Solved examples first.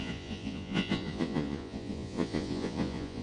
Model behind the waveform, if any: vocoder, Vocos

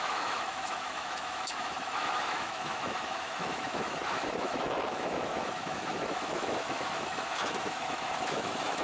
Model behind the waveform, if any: autoencoder, DAC-VAE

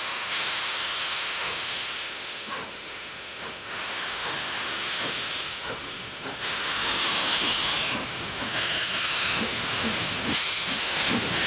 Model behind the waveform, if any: autoencoder, DAC-VAE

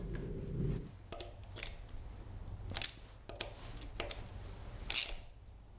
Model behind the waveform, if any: none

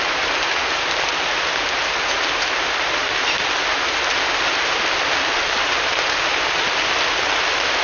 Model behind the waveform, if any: none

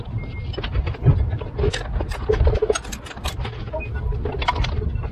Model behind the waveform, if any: none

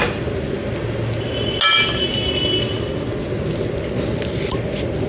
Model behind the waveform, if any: none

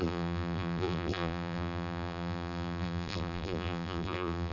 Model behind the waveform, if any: vocoder, BigVGAN v2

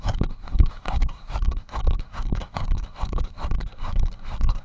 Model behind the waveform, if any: codec, SNAC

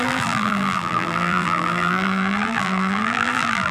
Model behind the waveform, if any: vocoder, BigVGAN v2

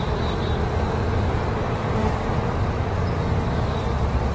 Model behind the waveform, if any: vocoder, BigVGAN v2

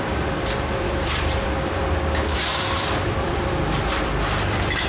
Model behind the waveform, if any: vocoder, BigVGAN v2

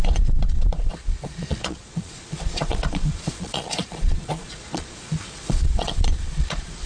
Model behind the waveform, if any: vocoder, Vocos